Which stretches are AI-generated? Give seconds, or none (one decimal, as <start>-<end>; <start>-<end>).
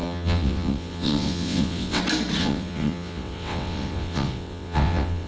0.0-2.0; 2.4-5.3